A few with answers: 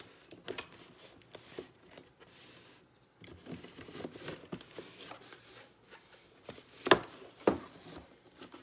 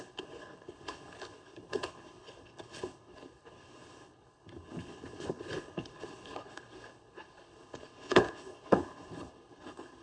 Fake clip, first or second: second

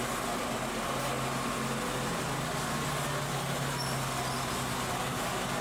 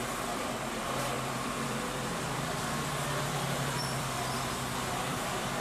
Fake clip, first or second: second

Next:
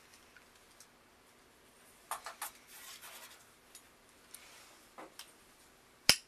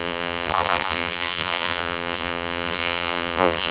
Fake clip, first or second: second